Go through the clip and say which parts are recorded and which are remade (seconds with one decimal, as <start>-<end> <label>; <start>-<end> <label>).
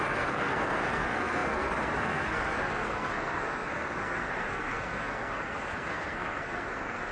0.0-7.1 remade